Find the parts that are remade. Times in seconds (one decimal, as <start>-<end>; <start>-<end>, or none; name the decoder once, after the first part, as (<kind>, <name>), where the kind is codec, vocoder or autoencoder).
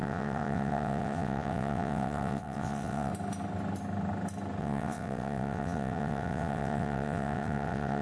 0.0-3.1 (vocoder, WaveNeXt); 4.6-8.0